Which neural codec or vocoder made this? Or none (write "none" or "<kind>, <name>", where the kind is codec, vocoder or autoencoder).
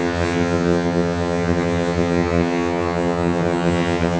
vocoder, HiFi-GAN